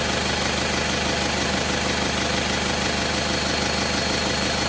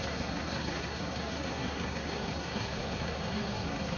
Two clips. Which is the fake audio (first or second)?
second